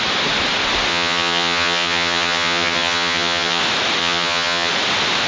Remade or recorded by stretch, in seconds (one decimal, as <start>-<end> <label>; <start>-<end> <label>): 0.0-0.9 recorded; 0.9-3.6 remade; 3.6-4.0 recorded; 4.0-4.7 remade; 4.7-5.3 recorded